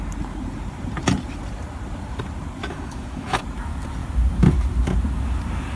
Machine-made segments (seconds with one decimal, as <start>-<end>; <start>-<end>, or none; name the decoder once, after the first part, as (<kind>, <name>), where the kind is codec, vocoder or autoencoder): 2.6-3.4 (autoencoder, DAC-VAE)